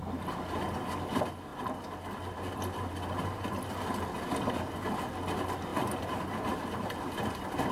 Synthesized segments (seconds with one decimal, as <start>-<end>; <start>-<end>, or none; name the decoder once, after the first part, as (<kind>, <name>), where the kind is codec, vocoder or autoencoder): 5.7-7.3 (vocoder, BigVGAN v2)